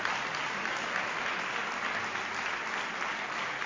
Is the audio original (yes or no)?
yes